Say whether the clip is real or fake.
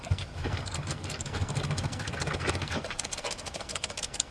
fake